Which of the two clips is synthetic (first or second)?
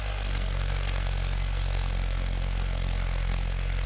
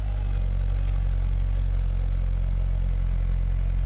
first